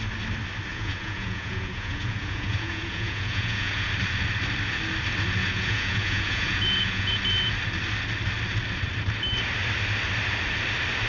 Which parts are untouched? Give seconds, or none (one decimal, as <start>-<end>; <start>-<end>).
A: 0.0-0.7; 3.9-5.4; 7.2-11.1